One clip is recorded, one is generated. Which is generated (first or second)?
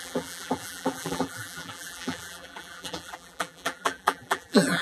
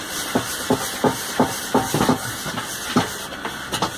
first